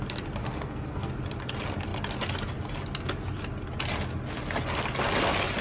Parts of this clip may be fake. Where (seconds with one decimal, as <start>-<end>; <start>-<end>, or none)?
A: 0.4-1.1